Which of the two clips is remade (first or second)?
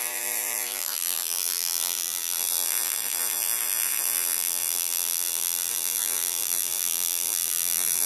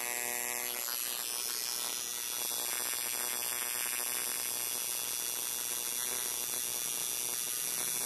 first